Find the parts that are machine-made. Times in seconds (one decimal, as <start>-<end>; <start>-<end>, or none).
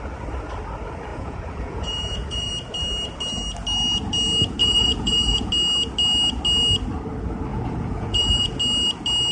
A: 1.1-2.5; 4.6-5.5; 7.5-8.6